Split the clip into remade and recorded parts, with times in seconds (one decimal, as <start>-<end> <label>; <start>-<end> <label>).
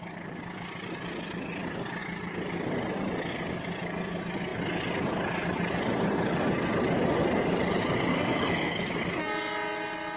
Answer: 0.0-8.1 recorded; 8.1-8.9 remade; 8.9-10.2 recorded